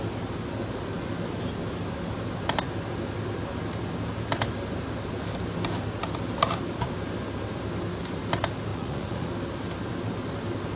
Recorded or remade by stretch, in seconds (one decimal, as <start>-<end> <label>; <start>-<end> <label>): 0.0-8.7 recorded; 8.7-9.3 remade; 9.3-10.8 recorded